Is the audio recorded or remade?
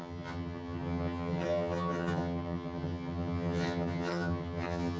remade